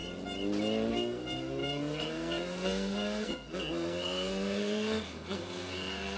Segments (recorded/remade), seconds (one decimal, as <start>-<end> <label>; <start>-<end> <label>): 0.0-0.9 recorded; 0.9-6.2 remade